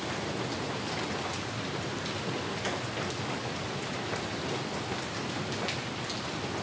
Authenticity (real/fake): real